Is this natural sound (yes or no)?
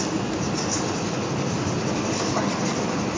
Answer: yes